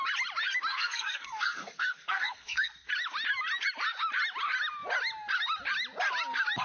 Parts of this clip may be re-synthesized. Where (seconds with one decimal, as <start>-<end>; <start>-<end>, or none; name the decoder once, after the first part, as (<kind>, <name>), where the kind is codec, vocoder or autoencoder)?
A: 0.7-2.9 (codec, SNAC)